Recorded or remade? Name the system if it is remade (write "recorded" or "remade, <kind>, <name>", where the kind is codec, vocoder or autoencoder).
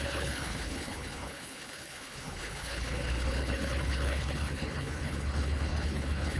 remade, codec, HILCodec